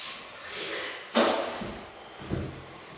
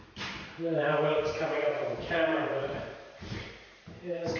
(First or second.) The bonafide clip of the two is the first